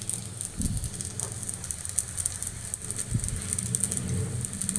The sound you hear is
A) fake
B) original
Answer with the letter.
B